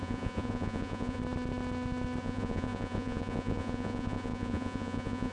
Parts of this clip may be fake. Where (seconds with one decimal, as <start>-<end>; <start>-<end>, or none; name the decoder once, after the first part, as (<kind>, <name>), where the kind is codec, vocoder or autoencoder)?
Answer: 0.0-1.2 (vocoder, Vocos); 2.2-5.3